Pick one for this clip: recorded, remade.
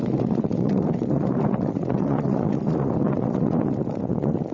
remade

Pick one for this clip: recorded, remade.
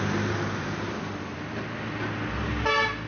recorded